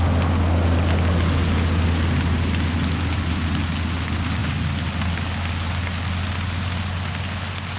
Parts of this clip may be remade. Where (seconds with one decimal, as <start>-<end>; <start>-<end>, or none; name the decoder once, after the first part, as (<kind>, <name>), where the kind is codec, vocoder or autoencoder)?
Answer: none